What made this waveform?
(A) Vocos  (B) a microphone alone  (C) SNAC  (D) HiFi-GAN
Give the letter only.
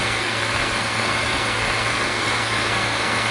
C